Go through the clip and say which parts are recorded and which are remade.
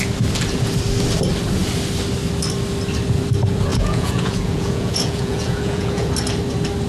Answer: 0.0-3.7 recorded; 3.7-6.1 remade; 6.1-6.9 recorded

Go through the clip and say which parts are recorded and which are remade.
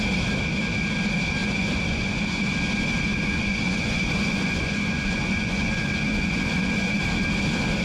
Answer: 0.0-1.4 recorded; 1.4-2.4 remade; 2.4-3.1 recorded; 3.1-7.0 remade; 7.0-7.8 recorded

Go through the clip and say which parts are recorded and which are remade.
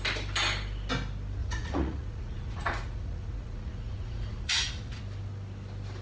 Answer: 0.0-1.4 recorded; 1.4-5.0 remade; 5.0-6.0 recorded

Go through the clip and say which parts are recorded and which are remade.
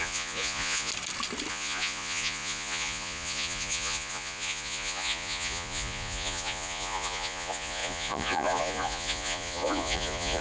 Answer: 0.0-0.9 remade; 0.9-1.5 recorded; 1.5-10.4 remade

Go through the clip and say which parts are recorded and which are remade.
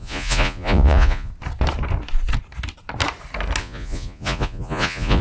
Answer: 0.0-1.3 remade; 1.3-3.6 recorded; 3.6-5.2 remade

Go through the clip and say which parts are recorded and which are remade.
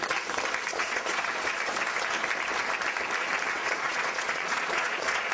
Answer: 0.0-0.7 recorded; 0.7-1.5 remade; 1.5-3.6 recorded; 3.6-5.3 remade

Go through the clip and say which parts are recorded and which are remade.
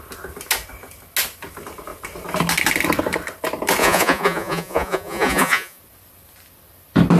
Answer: 0.0-3.8 recorded; 3.8-5.8 remade; 5.8-7.2 recorded